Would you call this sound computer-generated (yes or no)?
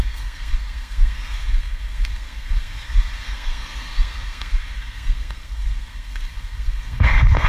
yes